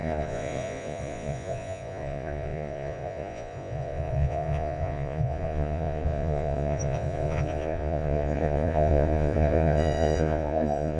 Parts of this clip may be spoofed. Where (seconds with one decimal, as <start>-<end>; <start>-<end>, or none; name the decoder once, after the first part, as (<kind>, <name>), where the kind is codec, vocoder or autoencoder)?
0.0-11.0 (vocoder, Vocos)